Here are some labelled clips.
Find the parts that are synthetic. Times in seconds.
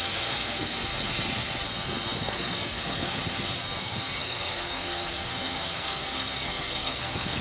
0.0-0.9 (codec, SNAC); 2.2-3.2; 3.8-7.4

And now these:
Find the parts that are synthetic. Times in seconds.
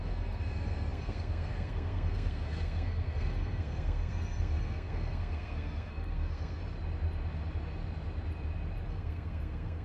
0.0-6.6 (codec, SNAC); 8.9-9.8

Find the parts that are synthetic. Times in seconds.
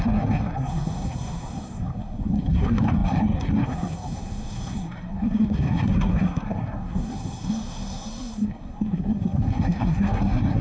0.0-10.6 (codec, SNAC)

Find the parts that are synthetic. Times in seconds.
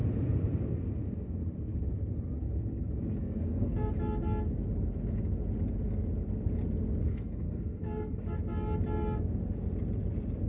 3.2-3.9 (codec, SNAC); 7.1-8.2